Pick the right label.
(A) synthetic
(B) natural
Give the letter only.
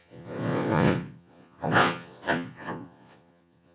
A